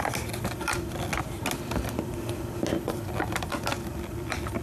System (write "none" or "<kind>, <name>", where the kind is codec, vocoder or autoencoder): none